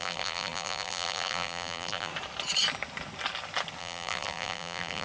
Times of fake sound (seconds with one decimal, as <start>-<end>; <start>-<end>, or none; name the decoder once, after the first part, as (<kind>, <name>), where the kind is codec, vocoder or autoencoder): 0.0-2.1 (vocoder, BigVGAN v2); 3.8-5.0